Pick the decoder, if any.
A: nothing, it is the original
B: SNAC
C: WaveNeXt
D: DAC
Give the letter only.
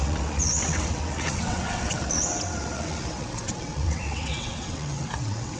C